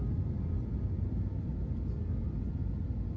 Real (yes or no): yes